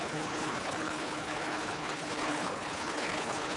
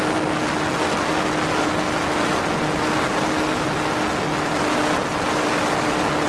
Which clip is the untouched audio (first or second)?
second